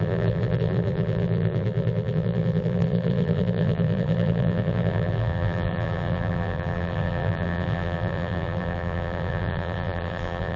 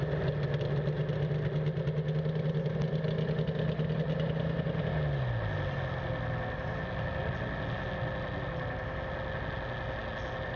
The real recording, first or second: second